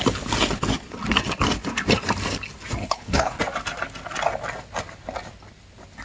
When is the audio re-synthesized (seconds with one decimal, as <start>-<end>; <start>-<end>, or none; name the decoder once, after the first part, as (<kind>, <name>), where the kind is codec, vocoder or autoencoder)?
2.8-3.4 (codec, HILCodec)